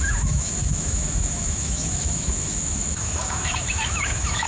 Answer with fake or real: fake